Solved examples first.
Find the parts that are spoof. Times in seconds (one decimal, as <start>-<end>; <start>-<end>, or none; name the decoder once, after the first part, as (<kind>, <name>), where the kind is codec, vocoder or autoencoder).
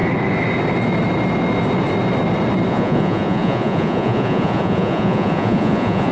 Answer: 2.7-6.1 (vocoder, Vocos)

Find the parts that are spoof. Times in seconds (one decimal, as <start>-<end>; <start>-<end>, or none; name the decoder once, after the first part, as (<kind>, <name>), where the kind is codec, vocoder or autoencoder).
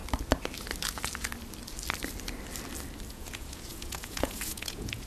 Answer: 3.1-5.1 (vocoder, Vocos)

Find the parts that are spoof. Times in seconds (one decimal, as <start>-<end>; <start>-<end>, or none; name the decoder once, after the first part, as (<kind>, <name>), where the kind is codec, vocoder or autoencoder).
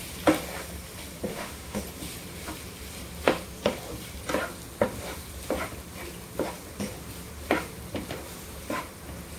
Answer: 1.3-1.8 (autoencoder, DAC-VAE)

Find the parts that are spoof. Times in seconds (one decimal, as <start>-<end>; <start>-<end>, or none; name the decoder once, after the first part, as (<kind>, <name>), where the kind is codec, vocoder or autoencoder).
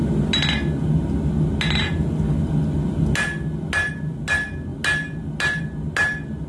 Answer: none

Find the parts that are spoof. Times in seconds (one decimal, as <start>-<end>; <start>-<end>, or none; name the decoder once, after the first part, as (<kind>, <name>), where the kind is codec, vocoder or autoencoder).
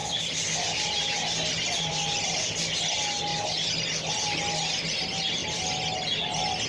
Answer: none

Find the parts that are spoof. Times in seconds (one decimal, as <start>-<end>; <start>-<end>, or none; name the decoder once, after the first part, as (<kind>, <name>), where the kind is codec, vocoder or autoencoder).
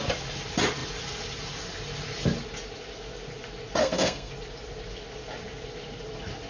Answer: 3.8-4.3 (codec, SNAC)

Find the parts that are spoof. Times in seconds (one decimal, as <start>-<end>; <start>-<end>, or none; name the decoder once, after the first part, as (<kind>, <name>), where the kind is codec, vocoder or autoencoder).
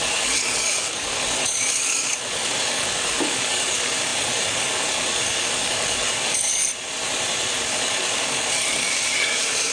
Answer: 0.0-6.6 (codec, DAC); 7.7-9.7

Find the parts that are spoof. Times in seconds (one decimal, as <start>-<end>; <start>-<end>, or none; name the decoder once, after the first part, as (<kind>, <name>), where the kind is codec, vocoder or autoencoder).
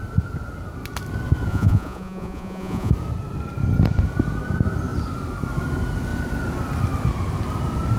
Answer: 1.5-2.9 (vocoder, Vocos)